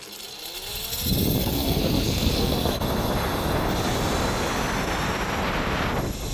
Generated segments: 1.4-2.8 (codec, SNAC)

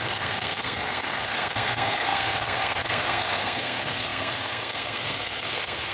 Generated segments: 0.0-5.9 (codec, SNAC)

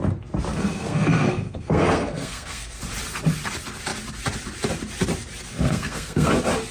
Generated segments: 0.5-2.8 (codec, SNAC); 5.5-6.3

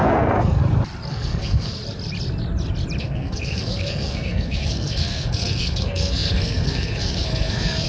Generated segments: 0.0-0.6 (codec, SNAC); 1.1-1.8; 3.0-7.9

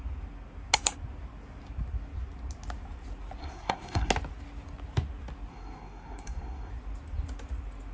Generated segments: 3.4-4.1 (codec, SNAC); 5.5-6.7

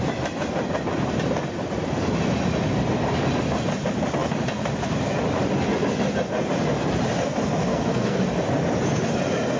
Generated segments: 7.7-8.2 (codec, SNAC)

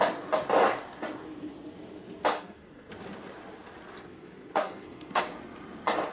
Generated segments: 2.3-2.9 (codec, SNAC); 4.1-5.2